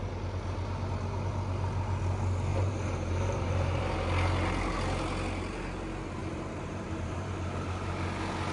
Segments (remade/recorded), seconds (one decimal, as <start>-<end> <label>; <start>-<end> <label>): 0.0-2.5 recorded; 2.5-3.8 remade; 3.8-6.2 recorded; 6.2-7.3 remade; 7.3-8.5 recorded